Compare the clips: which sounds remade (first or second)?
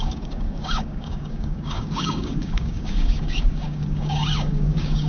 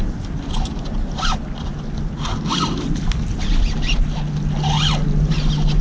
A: first